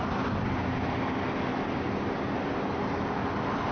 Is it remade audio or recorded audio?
recorded